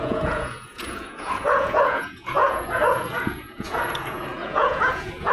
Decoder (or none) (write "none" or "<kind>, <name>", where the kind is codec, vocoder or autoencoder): vocoder, Vocos